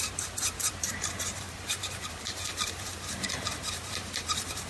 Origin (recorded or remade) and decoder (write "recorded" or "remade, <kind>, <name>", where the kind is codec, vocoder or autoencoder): remade, vocoder, BigVGAN v2